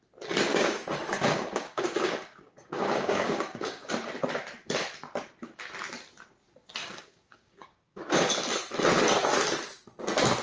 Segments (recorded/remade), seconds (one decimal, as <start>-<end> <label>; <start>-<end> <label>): 0.0-0.5 recorded; 0.5-3.9 remade; 3.9-6.8 recorded; 6.8-8.3 remade; 8.3-10.4 recorded